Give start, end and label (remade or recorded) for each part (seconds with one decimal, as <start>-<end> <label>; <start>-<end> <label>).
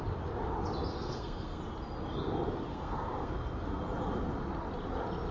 0.0-0.9 recorded; 0.9-1.6 remade; 1.6-2.7 recorded; 2.7-3.3 remade; 3.3-5.3 recorded